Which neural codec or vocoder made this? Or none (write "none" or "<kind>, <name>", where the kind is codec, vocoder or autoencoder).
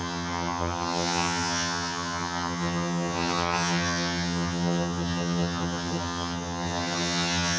vocoder, HiFi-GAN